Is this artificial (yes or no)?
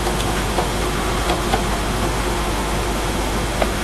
yes